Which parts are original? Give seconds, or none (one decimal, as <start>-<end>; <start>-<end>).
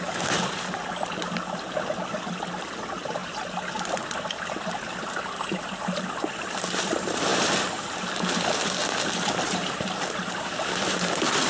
0.0-11.5